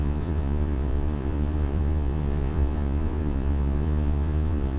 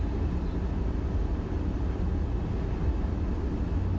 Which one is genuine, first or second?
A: second